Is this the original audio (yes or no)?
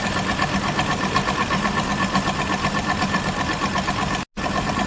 yes